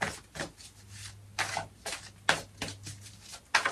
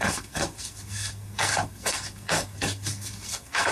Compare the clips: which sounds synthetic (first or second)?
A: second